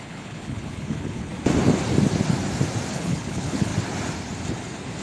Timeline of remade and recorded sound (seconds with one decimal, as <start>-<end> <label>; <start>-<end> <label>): 0.0-1.3 remade; 1.3-2.9 recorded; 2.9-3.7 remade; 3.7-5.0 recorded